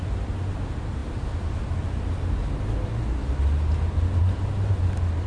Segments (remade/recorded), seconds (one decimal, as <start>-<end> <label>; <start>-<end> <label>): 0.0-5.3 recorded